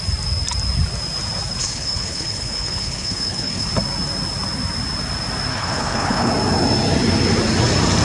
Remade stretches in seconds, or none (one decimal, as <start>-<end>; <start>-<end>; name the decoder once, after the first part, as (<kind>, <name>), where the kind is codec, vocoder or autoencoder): 1.6-3.7 (codec, HILCodec); 5.5-6.3

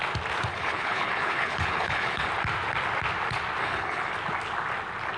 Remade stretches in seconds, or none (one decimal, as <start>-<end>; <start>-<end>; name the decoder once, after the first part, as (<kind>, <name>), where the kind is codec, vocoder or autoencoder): 0.5-2.3 (codec, HILCodec); 3.6-4.1

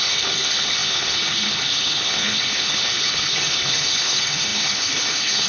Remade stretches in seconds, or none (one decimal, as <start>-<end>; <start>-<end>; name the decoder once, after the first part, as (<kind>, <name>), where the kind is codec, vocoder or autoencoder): 0.0-5.5 (codec, HILCodec)

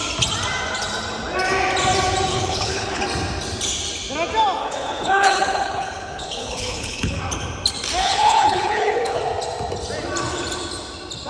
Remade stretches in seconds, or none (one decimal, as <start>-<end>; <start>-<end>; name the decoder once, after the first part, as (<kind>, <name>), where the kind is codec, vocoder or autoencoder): 2.3-3.0 (codec, HILCodec); 4.6-7.2; 8.0-9.2

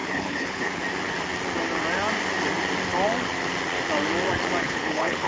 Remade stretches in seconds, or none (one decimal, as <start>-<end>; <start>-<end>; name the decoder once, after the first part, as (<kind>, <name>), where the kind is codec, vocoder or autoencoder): 0.0-0.8 (codec, HILCodec); 4.6-5.3

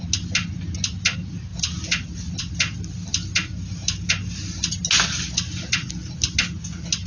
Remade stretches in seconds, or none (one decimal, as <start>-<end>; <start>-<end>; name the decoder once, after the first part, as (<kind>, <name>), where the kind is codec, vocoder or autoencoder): none

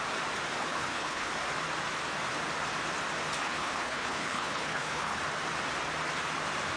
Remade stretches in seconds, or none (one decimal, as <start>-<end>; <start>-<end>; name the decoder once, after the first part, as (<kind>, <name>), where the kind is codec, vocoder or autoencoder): 0.6-1.3 (codec, HILCodec); 3.4-5.2

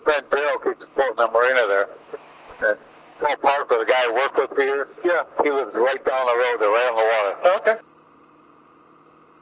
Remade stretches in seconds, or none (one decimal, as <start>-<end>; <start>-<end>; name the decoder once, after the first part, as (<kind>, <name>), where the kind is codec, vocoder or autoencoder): none